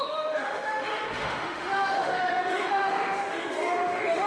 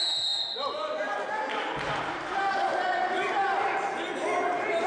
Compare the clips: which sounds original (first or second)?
second